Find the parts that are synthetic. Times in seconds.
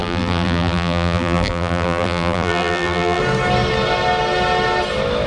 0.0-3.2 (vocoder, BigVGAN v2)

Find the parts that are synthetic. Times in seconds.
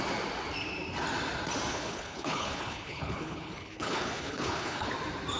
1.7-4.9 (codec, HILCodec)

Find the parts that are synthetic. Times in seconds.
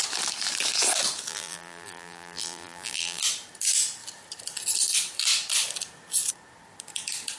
1.3-3.2 (vocoder, BigVGAN v2)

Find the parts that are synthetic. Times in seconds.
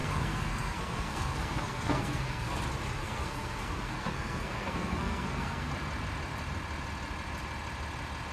0.0-2.6 (codec, SNAC); 3.0-5.7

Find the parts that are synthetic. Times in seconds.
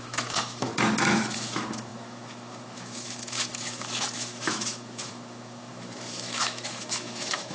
0.0-0.7 (autoencoder, DAC-VAE); 1.3-7.5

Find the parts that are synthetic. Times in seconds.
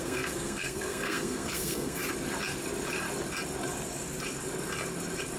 0.0-2.0 (codec, SNAC)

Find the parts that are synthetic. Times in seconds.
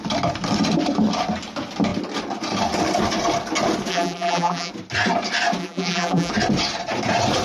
3.9-4.7 (vocoder, BigVGAN v2); 5.6-6.3